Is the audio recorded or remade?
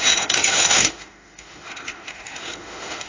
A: remade